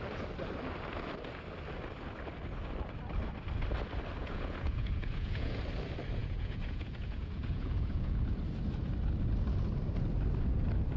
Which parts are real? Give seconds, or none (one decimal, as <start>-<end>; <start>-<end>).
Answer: 0.0-4.2; 5.6-6.2; 8.2-11.0